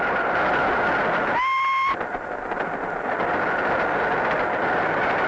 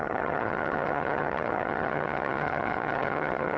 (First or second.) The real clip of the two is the first